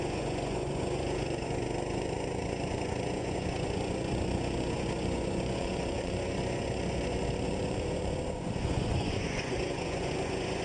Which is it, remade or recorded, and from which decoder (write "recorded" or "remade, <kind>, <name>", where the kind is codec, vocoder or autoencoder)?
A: remade, vocoder, Vocos